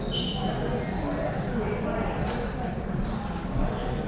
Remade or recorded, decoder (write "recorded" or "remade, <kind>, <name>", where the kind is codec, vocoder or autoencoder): recorded